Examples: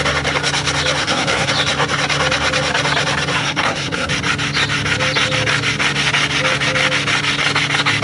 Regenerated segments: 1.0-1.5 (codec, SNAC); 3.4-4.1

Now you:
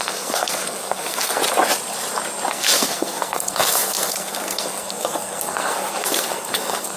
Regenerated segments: 0.0-1.4 (codec, SNAC); 2.5-7.0